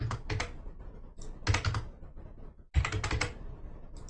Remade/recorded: recorded